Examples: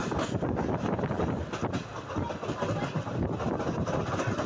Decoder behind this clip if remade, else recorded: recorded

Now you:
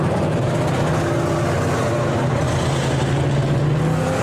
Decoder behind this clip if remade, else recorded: recorded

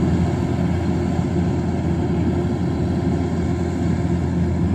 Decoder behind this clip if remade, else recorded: recorded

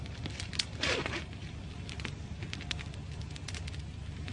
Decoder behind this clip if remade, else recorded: recorded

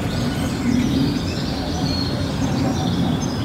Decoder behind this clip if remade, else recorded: recorded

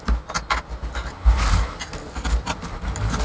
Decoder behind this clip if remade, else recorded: recorded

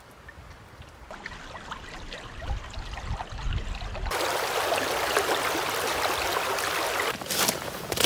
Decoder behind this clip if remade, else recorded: recorded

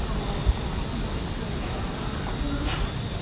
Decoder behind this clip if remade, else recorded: recorded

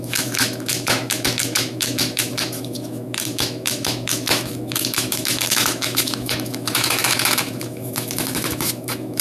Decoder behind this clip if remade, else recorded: remade, autoencoder, DAC-VAE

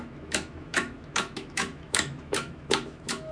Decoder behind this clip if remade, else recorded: remade, autoencoder, DAC-VAE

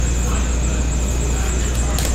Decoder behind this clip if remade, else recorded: recorded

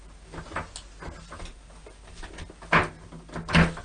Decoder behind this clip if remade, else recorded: recorded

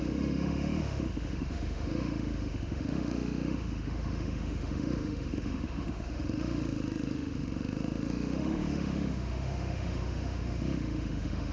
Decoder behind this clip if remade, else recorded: remade, autoencoder, DAC-VAE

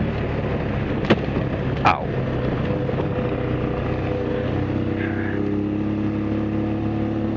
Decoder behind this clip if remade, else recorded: recorded